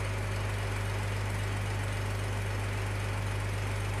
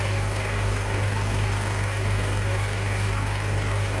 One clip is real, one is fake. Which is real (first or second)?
first